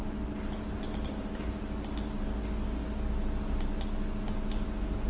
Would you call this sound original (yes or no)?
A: yes